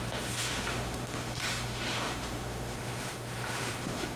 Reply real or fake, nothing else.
fake